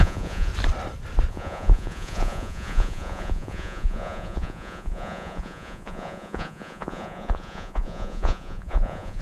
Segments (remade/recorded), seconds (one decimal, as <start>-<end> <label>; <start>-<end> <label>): 0.0-0.5 remade; 0.5-1.3 recorded; 1.3-9.2 remade